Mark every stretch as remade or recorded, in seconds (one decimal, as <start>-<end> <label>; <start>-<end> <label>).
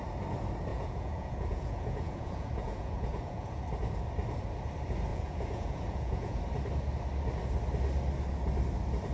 0.0-0.7 recorded; 0.7-3.6 remade; 3.6-5.1 recorded; 5.1-6.4 remade; 6.4-9.1 recorded